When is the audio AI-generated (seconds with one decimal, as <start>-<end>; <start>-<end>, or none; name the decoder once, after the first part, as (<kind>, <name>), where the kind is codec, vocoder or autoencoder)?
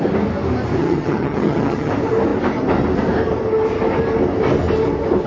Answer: 0.8-1.9 (vocoder, HiFi-GAN)